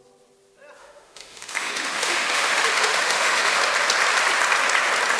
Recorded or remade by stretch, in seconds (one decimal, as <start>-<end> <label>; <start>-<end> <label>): 0.0-0.8 recorded; 0.8-3.6 remade; 3.6-5.2 recorded